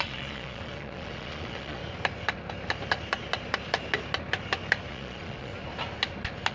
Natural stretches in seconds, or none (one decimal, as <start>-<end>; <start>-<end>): 1.8-4.9; 5.5-6.5